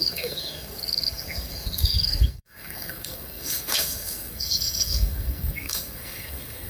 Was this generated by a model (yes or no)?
yes